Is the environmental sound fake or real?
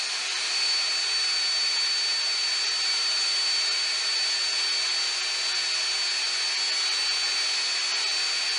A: real